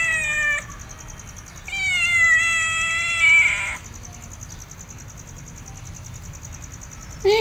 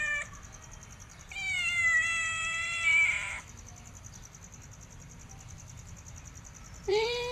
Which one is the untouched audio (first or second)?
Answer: first